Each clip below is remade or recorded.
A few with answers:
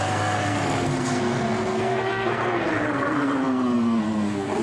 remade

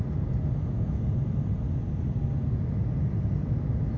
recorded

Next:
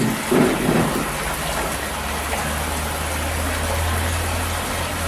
recorded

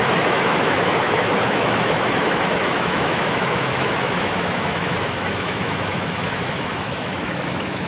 remade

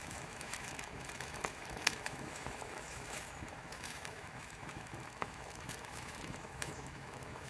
remade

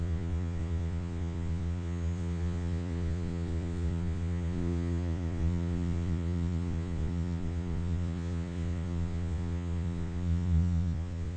remade